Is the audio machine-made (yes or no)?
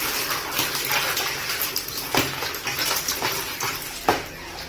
no